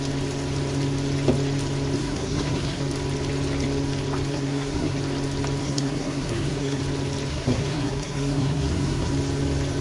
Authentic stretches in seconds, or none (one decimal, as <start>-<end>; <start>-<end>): 0.0-2.0; 2.8-4.3; 5.0-5.6; 6.8-7.3; 9.1-9.8